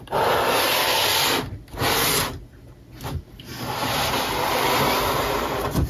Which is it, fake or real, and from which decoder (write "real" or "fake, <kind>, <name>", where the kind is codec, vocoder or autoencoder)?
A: real